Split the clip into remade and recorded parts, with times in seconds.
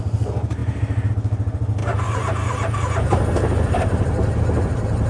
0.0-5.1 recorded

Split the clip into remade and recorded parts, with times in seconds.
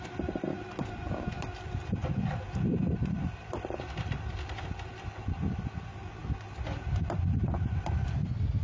0.0-8.6 recorded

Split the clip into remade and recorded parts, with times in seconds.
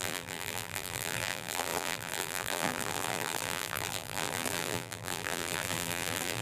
0.0-6.4 remade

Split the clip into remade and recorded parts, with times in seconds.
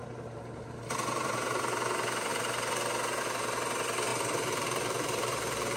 0.0-0.9 remade; 0.9-4.1 recorded; 4.1-5.8 remade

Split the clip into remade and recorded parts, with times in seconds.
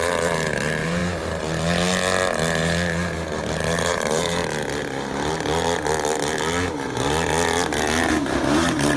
0.0-1.0 remade; 1.0-3.4 recorded; 3.4-4.4 remade; 4.4-8.1 recorded; 8.1-9.0 remade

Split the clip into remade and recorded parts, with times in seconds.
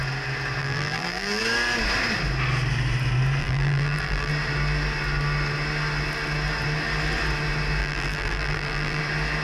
0.0-0.6 recorded; 0.6-1.4 remade; 1.4-3.4 recorded; 3.4-4.3 remade; 4.3-7.8 recorded; 7.8-9.0 remade; 9.0-9.4 recorded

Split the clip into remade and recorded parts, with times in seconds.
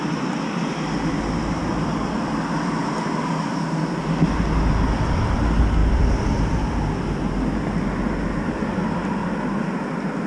0.0-10.3 recorded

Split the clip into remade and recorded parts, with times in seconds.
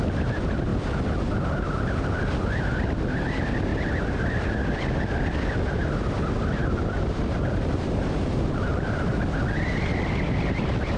0.0-6.6 recorded; 6.6-9.2 remade; 9.2-11.0 recorded